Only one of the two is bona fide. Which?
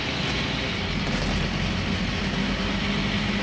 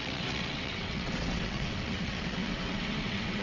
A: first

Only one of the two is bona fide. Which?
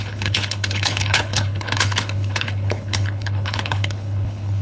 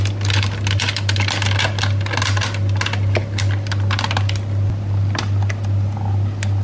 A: second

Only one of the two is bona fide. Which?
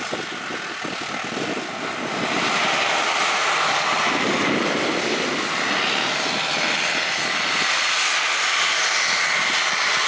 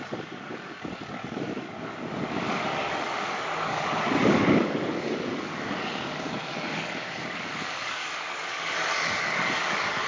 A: first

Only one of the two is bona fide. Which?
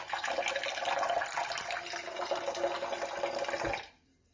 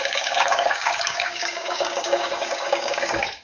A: first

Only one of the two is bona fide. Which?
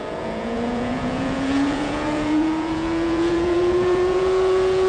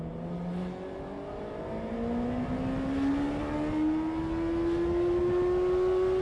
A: second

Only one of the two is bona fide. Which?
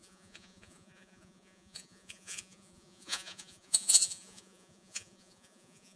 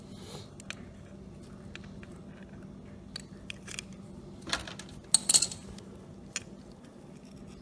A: second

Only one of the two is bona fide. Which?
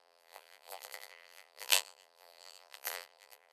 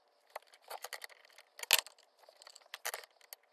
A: second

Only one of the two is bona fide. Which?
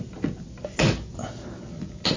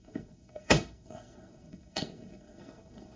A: first